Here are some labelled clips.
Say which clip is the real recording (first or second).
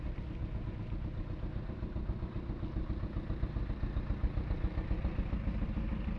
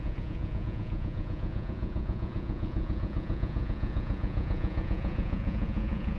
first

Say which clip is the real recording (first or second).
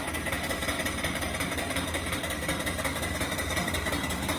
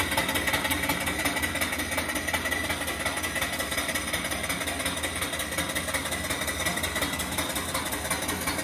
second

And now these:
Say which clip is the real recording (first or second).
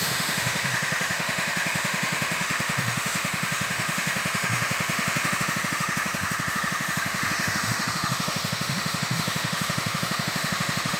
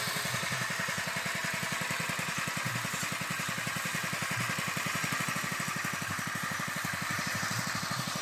second